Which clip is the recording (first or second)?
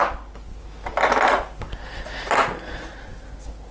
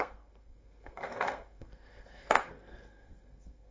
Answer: first